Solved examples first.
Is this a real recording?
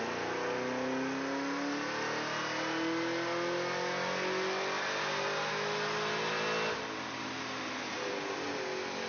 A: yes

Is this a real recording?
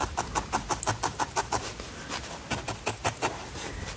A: yes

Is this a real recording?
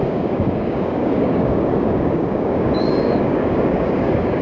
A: no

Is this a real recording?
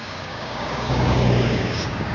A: no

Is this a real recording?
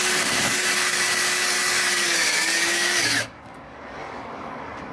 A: no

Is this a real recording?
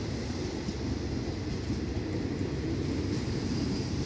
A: yes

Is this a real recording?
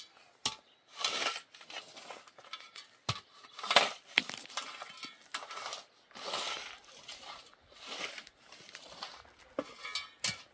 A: yes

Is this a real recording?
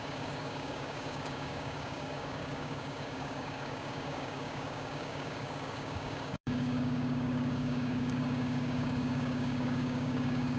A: no